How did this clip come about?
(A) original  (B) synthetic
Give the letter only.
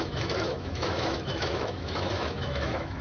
B